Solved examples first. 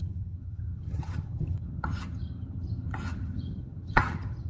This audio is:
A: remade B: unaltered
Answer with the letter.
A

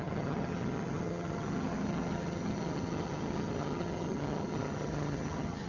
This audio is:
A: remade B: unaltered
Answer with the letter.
A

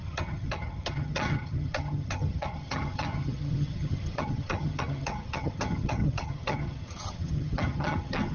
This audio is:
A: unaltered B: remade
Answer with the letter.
B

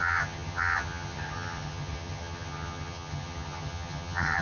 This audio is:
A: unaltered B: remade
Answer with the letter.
B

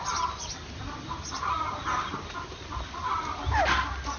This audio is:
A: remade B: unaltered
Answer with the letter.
B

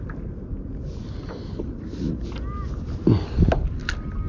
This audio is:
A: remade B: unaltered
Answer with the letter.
B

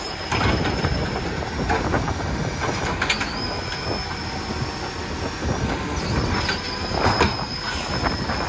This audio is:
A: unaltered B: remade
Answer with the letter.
A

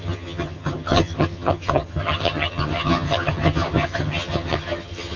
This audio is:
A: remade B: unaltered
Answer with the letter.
A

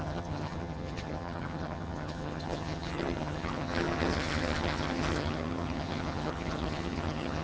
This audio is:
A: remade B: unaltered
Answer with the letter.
A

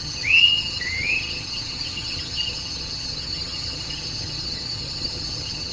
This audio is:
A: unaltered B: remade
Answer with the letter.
B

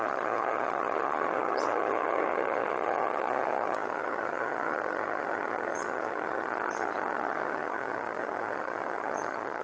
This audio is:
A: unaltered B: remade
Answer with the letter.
B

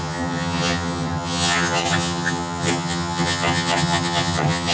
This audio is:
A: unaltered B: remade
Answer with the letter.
B